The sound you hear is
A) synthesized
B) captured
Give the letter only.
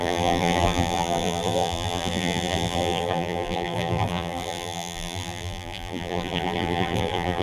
A